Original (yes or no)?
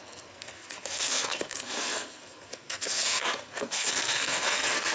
no